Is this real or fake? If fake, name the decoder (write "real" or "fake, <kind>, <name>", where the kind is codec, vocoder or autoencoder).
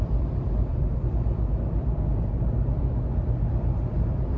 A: fake, vocoder, BigVGAN v2